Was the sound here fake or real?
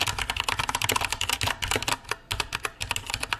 real